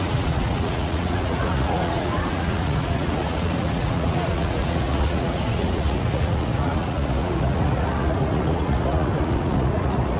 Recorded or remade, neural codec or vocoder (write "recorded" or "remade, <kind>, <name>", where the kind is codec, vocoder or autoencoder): remade, vocoder, Vocos